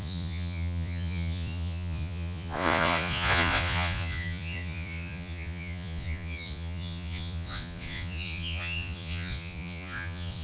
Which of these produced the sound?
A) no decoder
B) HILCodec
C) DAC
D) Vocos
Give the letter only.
D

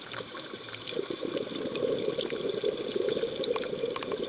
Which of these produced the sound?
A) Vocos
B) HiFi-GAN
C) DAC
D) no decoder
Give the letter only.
D